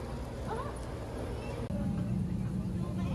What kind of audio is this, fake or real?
real